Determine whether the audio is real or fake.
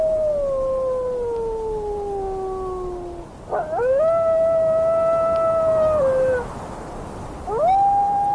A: real